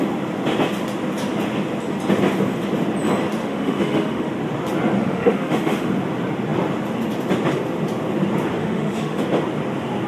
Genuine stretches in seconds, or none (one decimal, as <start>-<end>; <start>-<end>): 0.0-3.4; 4.3-5.0; 5.9-8.6; 9.2-10.1